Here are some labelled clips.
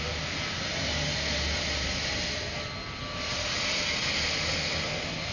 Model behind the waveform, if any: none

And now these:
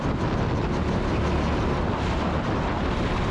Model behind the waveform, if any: none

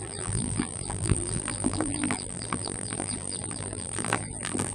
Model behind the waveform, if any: vocoder, BigVGAN v2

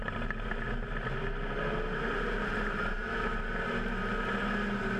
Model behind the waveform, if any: none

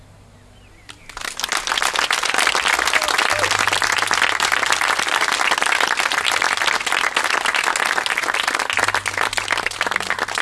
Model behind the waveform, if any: none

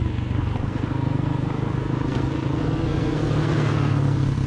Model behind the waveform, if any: codec, SNAC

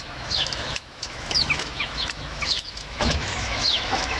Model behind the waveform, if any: autoencoder, DAC-VAE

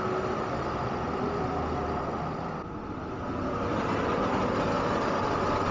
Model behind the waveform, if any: none